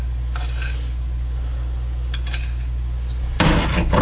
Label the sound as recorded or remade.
recorded